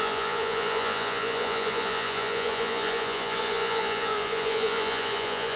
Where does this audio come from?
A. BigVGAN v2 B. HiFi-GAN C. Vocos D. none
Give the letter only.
C